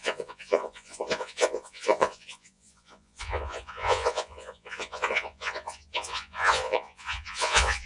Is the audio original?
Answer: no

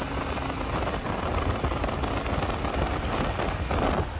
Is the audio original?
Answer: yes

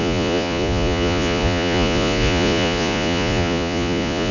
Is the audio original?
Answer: no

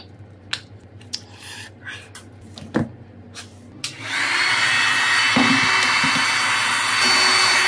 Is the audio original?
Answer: yes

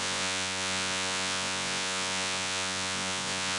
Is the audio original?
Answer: no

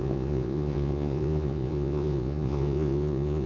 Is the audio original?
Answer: no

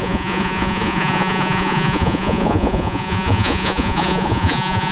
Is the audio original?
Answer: no